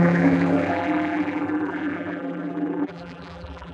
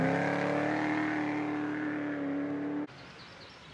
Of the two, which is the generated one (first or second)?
first